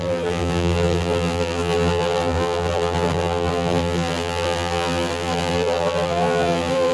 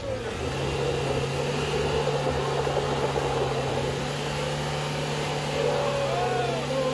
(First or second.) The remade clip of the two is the first